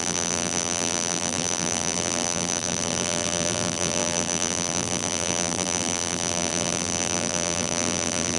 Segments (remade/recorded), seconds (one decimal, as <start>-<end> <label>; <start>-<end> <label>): 0.0-8.4 remade